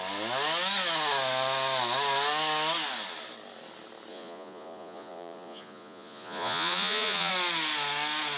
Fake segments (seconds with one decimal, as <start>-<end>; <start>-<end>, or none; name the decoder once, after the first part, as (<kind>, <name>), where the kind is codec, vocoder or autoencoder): 4.1-7.3 (vocoder, Vocos)

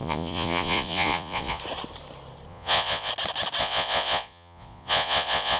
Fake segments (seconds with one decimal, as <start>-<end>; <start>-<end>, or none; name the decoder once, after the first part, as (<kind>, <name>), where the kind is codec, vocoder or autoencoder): 0.0-1.6 (vocoder, Vocos); 2.5-3.1; 3.6-5.6

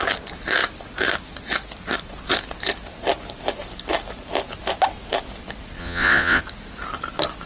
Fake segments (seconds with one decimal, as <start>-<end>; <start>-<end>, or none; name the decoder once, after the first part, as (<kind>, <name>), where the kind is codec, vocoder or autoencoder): 5.8-6.4 (vocoder, Vocos)

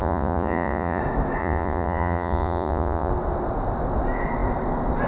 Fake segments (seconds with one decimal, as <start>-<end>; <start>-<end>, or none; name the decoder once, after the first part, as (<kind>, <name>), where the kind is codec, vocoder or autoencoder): 0.0-1.0 (vocoder, Vocos); 1.4-3.1

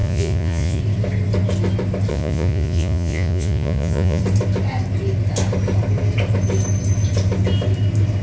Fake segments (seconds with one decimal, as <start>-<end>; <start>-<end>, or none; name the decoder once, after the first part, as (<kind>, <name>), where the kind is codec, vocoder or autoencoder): 0.0-0.8 (vocoder, Vocos); 2.1-4.2

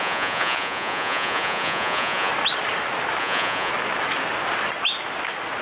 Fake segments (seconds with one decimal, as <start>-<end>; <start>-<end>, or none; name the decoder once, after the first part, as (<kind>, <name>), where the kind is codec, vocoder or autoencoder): 0.0-2.3 (vocoder, Vocos); 3.2-3.7

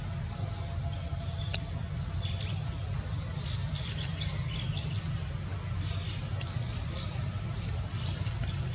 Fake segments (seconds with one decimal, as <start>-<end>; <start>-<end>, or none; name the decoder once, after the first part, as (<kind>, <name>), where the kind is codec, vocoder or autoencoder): none